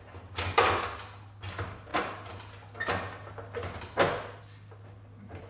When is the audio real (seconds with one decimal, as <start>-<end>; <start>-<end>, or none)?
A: 0.0-5.5